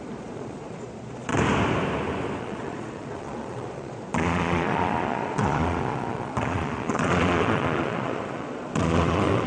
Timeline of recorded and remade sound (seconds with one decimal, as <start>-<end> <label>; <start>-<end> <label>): 0.0-1.3 remade; 1.3-2.4 recorded; 2.4-9.5 remade